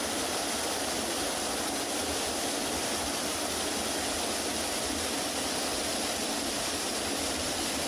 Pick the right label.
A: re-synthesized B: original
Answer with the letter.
B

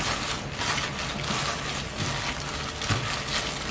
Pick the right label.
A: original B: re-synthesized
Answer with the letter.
A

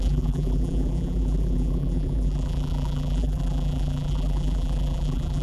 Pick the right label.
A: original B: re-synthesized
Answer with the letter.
B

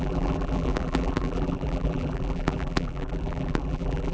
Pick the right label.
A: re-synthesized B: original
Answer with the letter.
A